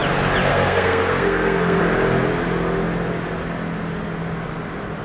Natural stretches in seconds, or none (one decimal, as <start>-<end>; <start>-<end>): 0.0-0.5; 1.8-5.0